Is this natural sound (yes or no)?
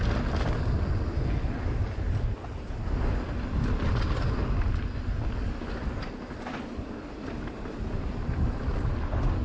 yes